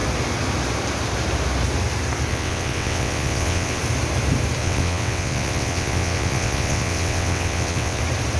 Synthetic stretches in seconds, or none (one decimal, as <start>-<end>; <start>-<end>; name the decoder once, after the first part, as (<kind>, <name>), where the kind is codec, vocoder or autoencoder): 2.3-3.8 (vocoder, WaveNeXt); 4.6-8.0